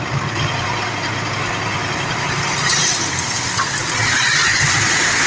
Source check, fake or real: real